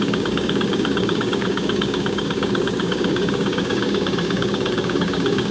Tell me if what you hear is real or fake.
fake